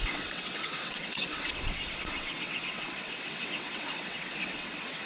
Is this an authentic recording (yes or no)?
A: no